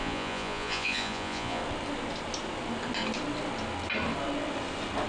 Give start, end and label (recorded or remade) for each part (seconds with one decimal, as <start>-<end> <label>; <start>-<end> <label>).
0.0-1.6 remade; 1.6-5.1 recorded